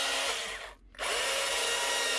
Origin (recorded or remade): recorded